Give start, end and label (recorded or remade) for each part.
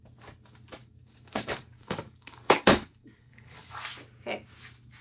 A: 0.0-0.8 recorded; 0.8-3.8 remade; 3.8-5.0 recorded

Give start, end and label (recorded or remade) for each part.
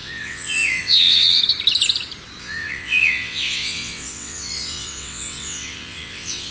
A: 0.0-1.4 remade; 1.4-2.4 recorded; 2.4-6.5 remade